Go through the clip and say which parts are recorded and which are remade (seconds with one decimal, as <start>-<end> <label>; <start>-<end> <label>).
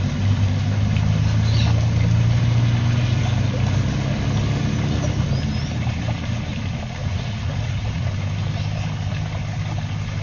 0.0-7.0 recorded; 7.0-8.1 remade; 8.1-10.2 recorded